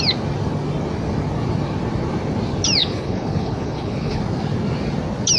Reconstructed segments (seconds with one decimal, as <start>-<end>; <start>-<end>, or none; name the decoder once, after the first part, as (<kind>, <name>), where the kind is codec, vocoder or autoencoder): 2.8-4.2 (codec, HILCodec)